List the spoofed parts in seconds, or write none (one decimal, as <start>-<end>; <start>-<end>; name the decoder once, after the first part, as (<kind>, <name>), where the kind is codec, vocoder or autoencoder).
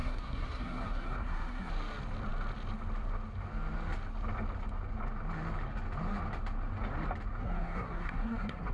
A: 0.0-1.7 (codec, SNAC); 7.4-8.7